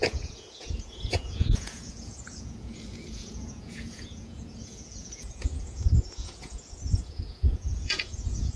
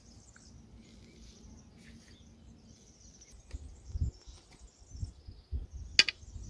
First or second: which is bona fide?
second